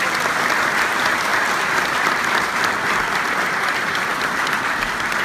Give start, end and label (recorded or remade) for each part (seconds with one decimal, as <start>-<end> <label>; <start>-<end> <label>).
0.0-1.3 recorded; 1.3-3.1 remade; 3.1-5.2 recorded